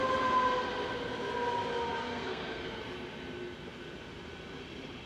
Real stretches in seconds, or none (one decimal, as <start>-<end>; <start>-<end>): 0.0-2.1; 2.8-5.1